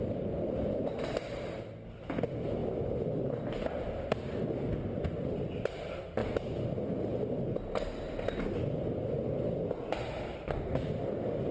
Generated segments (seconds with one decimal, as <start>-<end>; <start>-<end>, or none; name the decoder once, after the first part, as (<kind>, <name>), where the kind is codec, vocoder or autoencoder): 0.0-6.2 (vocoder, BigVGAN v2); 10.9-11.5